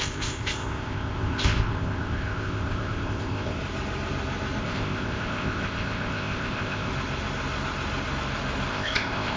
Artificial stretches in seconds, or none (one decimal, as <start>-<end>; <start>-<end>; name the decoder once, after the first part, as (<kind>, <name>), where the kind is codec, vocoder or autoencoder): 0.0-3.6 (codec, ZipCodec); 4.6-6.9; 8.7-9.4